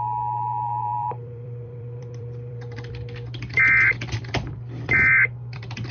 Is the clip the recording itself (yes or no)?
no